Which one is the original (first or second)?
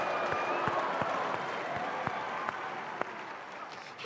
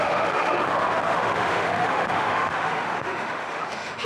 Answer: first